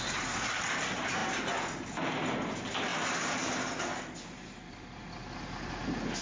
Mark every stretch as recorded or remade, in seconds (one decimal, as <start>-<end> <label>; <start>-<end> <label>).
0.0-6.2 recorded